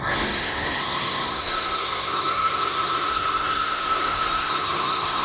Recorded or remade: remade